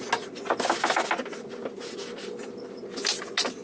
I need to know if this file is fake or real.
real